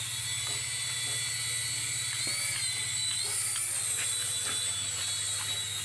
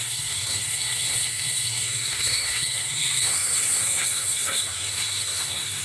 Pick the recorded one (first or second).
first